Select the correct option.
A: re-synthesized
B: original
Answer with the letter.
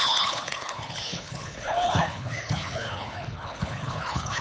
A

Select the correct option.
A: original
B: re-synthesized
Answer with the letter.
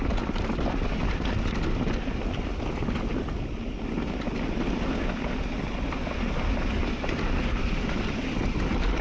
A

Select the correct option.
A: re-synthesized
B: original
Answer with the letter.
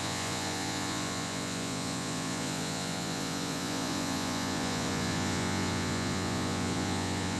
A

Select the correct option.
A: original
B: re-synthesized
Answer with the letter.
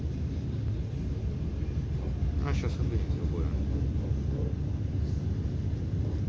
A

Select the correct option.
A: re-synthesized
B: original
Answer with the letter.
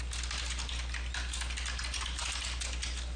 B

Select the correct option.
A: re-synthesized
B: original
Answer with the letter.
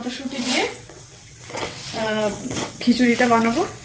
A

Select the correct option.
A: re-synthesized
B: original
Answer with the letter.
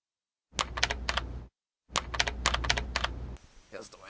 B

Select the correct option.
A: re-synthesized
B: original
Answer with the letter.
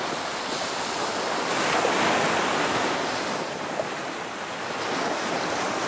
B